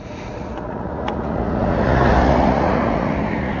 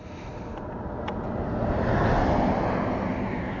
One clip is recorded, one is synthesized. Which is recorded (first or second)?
second